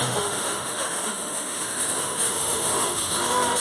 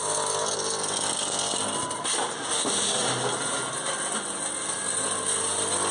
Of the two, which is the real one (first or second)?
second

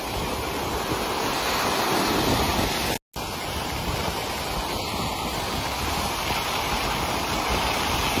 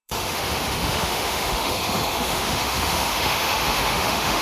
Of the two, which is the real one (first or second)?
first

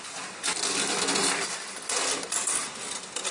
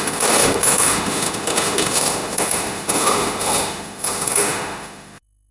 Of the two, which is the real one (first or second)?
first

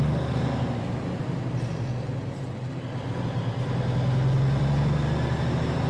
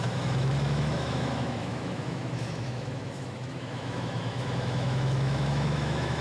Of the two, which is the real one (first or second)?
first